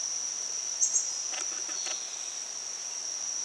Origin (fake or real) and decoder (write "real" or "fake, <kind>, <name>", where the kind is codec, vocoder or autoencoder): real